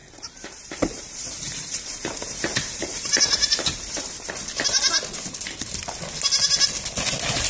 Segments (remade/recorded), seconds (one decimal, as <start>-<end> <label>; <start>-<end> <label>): 0.0-4.3 remade; 4.3-7.5 recorded